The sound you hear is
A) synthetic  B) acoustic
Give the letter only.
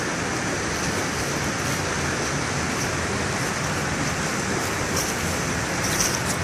B